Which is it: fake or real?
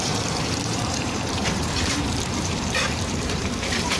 fake